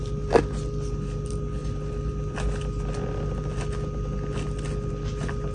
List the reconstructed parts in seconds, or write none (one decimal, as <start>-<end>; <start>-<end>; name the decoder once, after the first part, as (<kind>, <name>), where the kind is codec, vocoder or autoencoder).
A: none